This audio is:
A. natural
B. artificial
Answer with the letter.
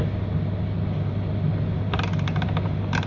A